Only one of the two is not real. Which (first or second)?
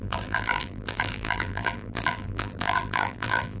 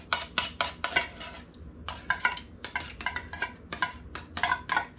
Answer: first